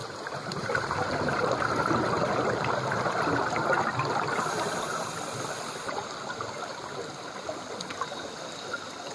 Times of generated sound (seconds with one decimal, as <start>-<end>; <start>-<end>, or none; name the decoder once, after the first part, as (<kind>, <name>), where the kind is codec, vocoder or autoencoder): 0.0-2.4 (vocoder, BigVGAN v2)